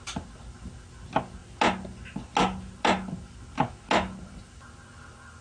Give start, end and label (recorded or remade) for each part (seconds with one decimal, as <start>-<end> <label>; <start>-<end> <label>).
0.0-5.4 recorded